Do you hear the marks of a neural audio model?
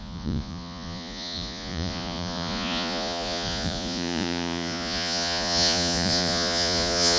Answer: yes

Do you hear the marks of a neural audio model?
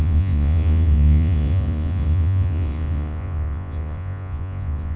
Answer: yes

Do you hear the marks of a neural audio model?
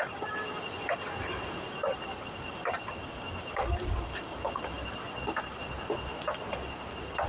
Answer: no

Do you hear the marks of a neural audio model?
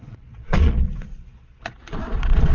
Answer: yes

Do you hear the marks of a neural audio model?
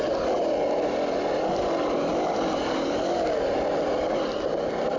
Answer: no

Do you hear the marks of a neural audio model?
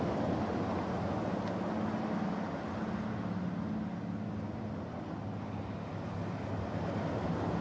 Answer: no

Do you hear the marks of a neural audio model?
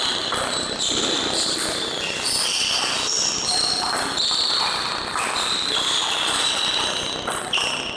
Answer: no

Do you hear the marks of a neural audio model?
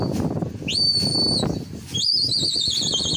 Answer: no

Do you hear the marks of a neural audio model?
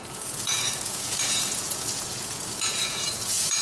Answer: yes